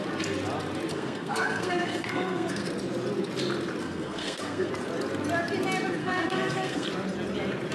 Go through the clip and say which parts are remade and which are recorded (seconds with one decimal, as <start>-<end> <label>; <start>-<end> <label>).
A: 0.0-0.9 recorded; 0.9-2.7 remade; 2.7-3.8 recorded; 3.8-4.7 remade; 4.7-6.0 recorded; 6.0-6.9 remade; 6.9-7.7 recorded